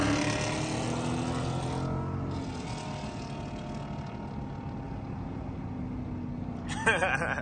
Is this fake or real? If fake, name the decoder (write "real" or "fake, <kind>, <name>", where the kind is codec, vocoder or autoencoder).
real